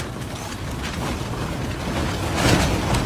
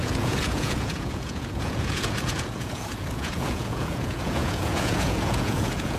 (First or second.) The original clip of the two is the first